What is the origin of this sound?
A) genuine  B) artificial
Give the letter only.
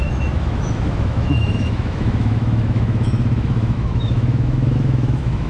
B